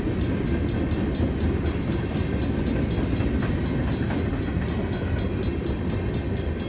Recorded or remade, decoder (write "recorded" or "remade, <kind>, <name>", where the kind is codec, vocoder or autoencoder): recorded